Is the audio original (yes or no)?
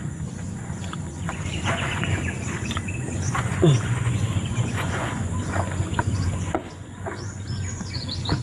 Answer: no